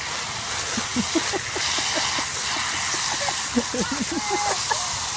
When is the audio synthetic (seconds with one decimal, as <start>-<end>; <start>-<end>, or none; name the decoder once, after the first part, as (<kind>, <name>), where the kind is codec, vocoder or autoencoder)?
none

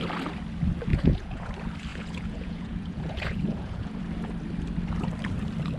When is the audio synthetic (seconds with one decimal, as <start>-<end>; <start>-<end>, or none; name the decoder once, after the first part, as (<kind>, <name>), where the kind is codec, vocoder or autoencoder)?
0.9-1.5 (vocoder, Vocos); 1.9-4.0

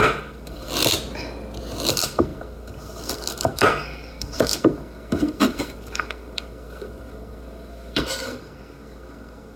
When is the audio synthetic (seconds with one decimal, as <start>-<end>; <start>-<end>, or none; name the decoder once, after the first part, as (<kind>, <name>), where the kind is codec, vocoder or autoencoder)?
0.0-0.7 (codec, SNAC); 1.9-9.6